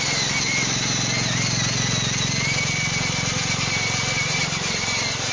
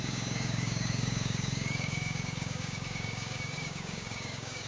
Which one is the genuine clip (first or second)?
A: first